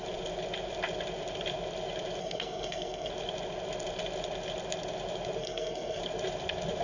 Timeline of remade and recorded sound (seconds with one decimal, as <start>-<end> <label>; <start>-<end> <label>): 0.0-2.2 recorded; 2.2-3.1 remade; 3.1-5.4 recorded; 5.4-6.0 remade; 6.0-6.8 recorded